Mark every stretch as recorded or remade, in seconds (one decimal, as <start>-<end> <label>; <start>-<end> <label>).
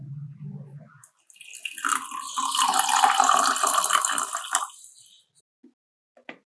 0.0-6.5 recorded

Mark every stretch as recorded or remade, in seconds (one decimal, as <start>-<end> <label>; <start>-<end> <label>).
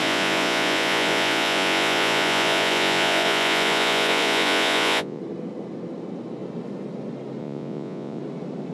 0.0-5.2 remade; 5.2-7.4 recorded; 7.4-8.2 remade; 8.2-8.7 recorded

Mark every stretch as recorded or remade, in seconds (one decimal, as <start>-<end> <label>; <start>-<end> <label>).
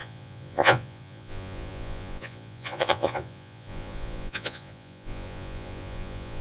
0.0-6.4 remade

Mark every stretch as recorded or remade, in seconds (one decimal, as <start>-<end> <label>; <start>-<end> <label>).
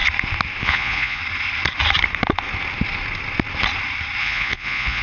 0.0-0.6 recorded; 0.6-1.2 remade; 1.2-4.2 recorded; 4.2-5.0 remade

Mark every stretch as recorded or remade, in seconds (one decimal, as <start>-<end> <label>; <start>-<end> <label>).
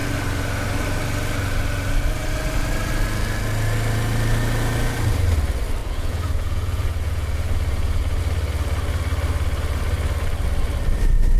0.0-5.8 recorded; 5.8-8.2 remade; 8.2-11.4 recorded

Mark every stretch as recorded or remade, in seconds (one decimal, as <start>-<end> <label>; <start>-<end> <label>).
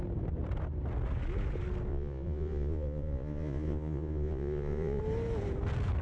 0.0-1.9 recorded; 1.9-5.0 remade; 5.0-6.0 recorded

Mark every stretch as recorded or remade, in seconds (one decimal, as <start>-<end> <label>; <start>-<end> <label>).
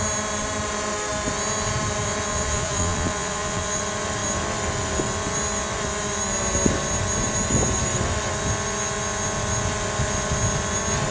0.0-2.3 recorded; 2.3-3.8 remade; 3.8-11.1 recorded